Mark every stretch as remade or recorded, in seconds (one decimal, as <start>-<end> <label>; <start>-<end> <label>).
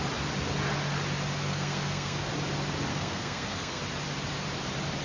0.0-1.4 recorded; 1.4-2.3 remade; 2.3-2.9 recorded; 2.9-3.8 remade; 3.8-5.0 recorded